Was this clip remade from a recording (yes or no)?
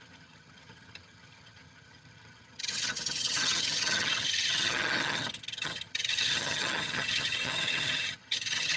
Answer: yes